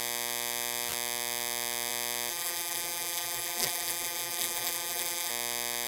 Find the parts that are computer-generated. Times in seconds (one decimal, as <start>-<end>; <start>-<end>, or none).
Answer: 2.3-5.3